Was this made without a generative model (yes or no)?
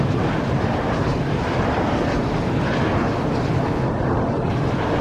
yes